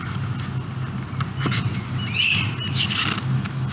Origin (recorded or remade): recorded